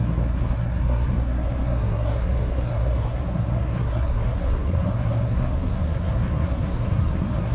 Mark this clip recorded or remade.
remade